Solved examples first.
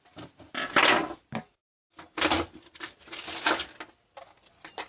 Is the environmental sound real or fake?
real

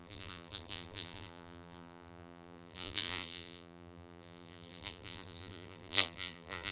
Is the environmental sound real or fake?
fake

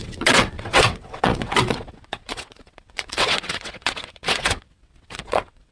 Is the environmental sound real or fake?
fake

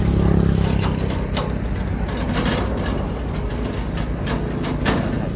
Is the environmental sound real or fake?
real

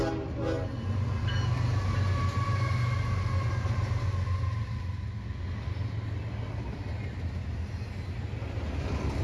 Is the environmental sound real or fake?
real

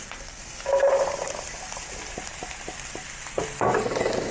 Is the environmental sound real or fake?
real